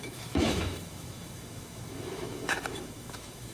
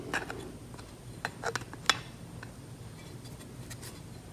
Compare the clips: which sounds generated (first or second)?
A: first